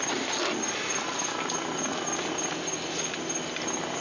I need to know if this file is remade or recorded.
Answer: recorded